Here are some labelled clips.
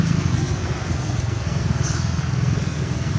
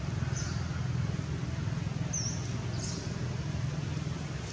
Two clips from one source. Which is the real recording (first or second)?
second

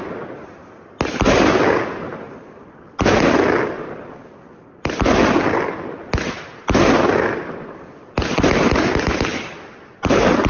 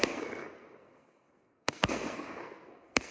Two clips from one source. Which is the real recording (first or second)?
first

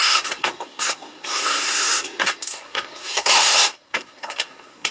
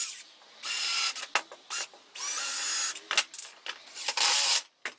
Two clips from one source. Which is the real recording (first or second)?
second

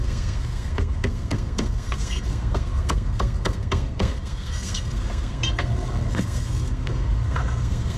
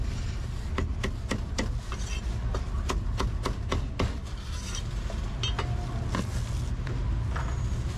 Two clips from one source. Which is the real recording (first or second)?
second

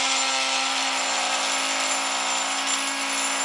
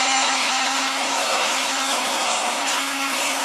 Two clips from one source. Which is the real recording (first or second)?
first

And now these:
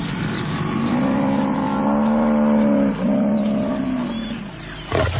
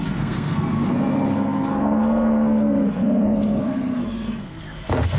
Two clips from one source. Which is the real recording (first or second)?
first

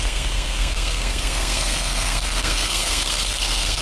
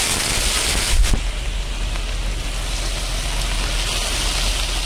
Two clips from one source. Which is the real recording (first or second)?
second